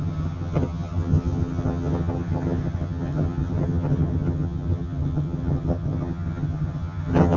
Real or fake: fake